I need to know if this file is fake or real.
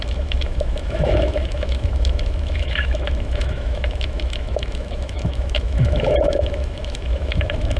fake